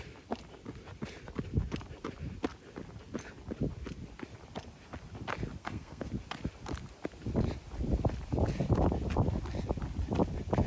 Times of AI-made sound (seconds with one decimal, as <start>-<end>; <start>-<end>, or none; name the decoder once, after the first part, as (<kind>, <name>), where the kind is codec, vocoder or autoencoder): 5.6-6.1 (codec, SNAC)